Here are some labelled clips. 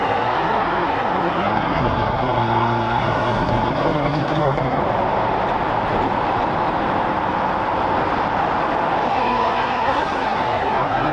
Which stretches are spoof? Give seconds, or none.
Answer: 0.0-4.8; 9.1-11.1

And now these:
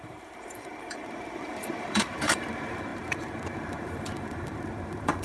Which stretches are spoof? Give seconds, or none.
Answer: 0.0-5.2

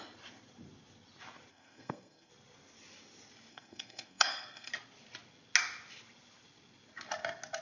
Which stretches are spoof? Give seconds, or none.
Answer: 1.5-2.3; 3.5-4.7

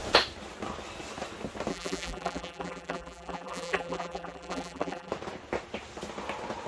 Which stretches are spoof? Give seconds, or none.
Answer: 1.7-5.1